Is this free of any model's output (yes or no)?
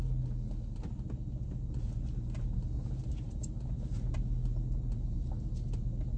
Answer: yes